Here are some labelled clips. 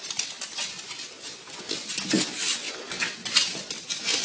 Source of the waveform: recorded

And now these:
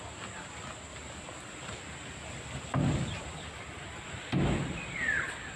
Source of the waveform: recorded